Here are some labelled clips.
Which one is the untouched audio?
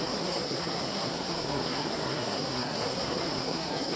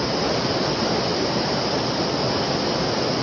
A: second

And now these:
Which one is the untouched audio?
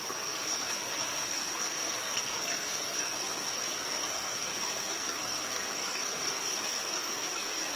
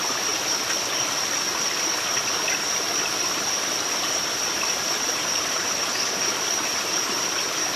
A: second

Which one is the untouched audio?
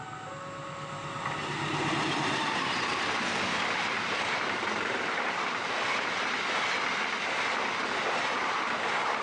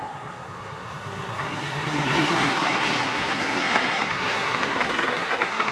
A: first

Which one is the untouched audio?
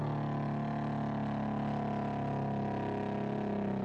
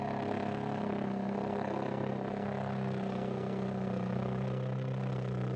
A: first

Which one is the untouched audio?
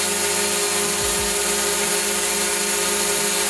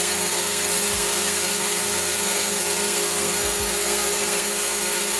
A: first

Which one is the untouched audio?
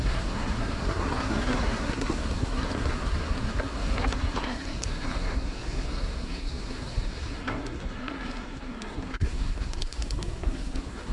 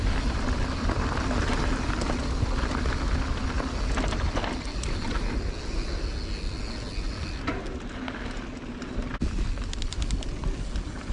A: second